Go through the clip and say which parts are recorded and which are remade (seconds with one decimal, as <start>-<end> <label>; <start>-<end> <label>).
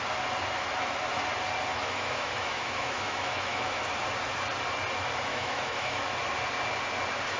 0.0-1.7 recorded; 1.7-3.8 remade; 3.8-5.3 recorded; 5.3-6.0 remade; 6.0-7.4 recorded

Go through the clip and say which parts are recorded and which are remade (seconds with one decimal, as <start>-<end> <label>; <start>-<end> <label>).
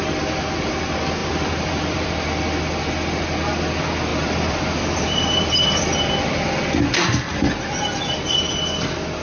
0.0-1.2 recorded; 1.2-2.1 remade; 2.1-4.1 recorded; 4.1-6.8 remade; 6.8-9.2 recorded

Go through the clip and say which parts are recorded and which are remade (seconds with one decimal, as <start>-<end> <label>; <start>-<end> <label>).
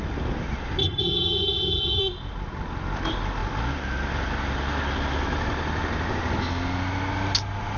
0.0-0.8 recorded; 0.8-2.0 remade; 2.0-7.8 recorded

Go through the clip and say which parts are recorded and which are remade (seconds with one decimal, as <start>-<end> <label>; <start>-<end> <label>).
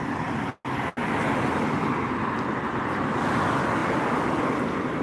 0.0-5.0 recorded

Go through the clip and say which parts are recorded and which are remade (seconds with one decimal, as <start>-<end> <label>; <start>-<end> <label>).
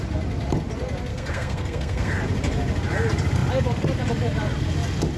0.0-1.1 recorded; 1.1-2.1 remade; 2.1-5.2 recorded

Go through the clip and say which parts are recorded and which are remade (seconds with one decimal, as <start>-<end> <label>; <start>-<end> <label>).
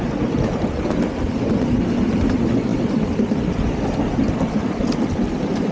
0.0-5.7 recorded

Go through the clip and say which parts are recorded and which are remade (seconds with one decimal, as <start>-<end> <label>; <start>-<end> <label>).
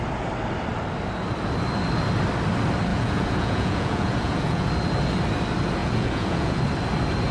0.0-2.9 recorded; 2.9-4.7 remade; 4.7-5.8 recorded; 5.8-6.6 remade; 6.6-7.3 recorded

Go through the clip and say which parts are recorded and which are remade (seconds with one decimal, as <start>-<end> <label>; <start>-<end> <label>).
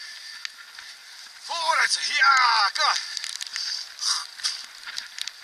0.0-1.0 recorded; 1.0-2.6 remade; 2.6-5.4 recorded